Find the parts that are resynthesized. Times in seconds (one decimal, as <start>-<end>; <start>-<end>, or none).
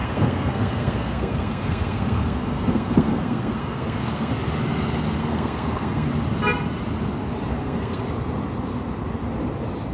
0.0-4.3; 5.2-6.1; 7.5-8.0